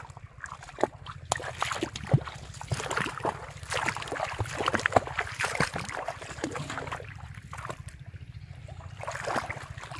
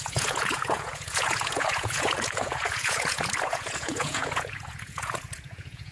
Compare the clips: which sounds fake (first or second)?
second